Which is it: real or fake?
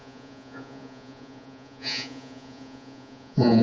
fake